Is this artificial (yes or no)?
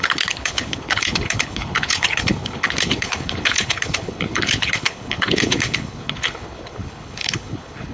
yes